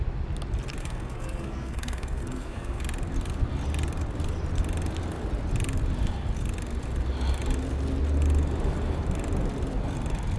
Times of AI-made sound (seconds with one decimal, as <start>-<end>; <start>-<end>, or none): 0.8-2.8